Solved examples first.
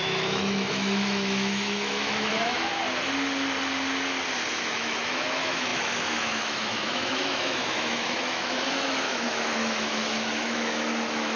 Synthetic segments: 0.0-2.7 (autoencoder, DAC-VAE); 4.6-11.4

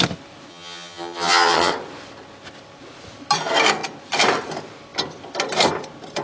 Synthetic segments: 0.5-1.7 (vocoder, HiFi-GAN)

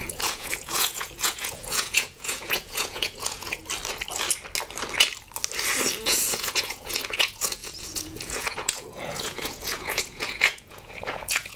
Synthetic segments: 0.0-3.6 (vocoder, Vocos); 6.0-11.6

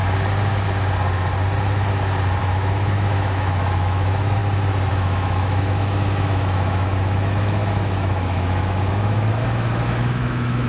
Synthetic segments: 2.4-4.4 (autoencoder, DAC-VAE); 4.9-10.7

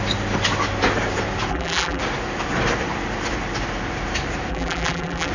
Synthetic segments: 1.5-2.0 (vocoder, BigVGAN v2); 4.5-5.3